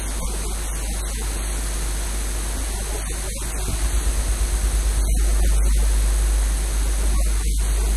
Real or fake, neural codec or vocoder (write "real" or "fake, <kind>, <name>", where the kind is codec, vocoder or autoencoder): real